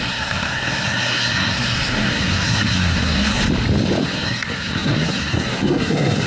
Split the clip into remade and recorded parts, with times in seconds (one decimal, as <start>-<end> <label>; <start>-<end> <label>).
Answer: 0.0-3.4 remade; 3.4-4.0 recorded; 4.0-6.3 remade